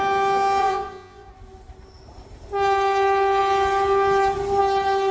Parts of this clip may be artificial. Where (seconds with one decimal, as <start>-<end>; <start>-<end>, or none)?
0.6-1.3